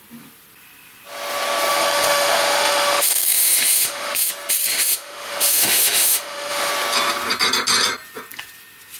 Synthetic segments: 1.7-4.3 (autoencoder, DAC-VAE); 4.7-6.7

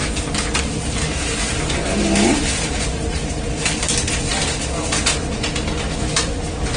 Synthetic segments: none

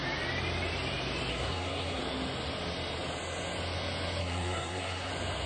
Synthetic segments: 1.3-2.0 (codec, SNAC); 4.2-5.1

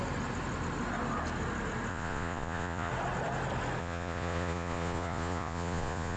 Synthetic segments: 1.9-2.9 (vocoder, Vocos); 3.8-6.2

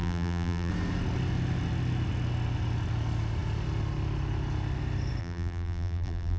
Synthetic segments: 0.0-0.7 (vocoder, BigVGAN v2); 5.2-6.4

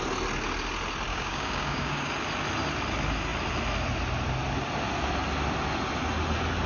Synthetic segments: 1.1-2.1 (codec, DAC)